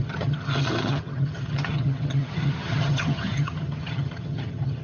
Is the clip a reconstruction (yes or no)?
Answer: yes